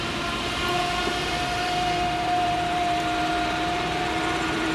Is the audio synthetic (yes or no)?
yes